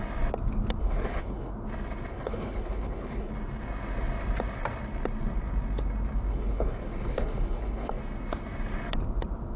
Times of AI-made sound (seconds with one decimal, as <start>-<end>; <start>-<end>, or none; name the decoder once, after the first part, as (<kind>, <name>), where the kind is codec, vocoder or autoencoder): 0.8-1.5 (codec, HILCodec); 2.1-3.3; 6.3-8.0